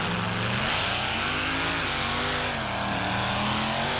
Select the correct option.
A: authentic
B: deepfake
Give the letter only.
A